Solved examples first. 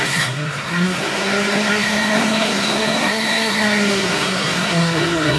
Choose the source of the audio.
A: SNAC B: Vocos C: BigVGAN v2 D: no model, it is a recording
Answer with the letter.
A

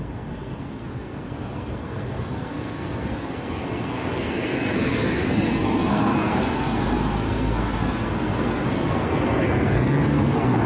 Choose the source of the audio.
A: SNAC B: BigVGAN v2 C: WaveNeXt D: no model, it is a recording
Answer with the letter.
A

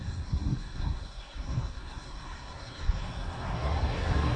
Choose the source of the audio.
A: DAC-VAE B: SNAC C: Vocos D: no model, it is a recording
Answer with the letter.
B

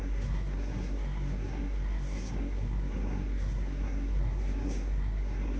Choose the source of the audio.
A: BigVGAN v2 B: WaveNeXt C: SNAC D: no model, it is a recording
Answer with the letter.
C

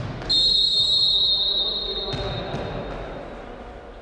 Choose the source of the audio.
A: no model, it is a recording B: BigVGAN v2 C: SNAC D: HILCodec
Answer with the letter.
A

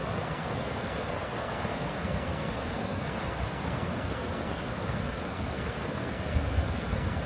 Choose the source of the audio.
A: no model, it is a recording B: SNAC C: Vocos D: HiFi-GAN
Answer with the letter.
B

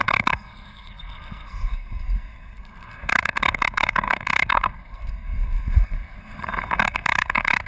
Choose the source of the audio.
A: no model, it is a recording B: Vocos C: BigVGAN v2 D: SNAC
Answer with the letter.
D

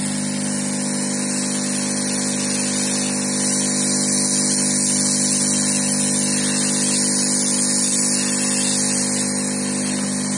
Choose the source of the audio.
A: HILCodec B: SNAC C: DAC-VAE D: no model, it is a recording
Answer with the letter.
D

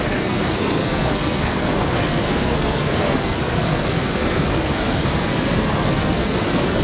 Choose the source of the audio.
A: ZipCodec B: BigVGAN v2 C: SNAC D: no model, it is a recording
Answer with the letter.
C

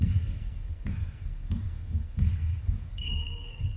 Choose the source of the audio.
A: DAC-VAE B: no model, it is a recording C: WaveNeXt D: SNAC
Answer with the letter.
D